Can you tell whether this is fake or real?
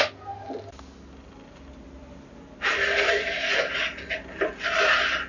real